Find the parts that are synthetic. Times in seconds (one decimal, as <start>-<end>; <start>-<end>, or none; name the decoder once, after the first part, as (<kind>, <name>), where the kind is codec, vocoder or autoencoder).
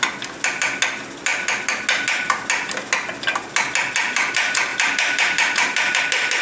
4.7-6.0 (vocoder, BigVGAN v2)